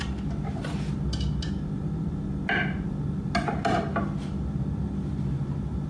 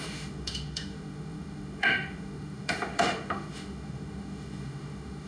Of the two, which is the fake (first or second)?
second